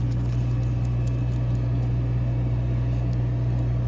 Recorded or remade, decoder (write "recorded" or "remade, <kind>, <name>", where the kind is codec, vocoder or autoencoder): recorded